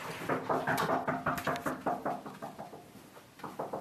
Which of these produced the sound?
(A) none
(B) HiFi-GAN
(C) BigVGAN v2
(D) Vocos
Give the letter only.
A